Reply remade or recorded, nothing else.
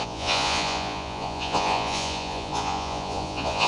remade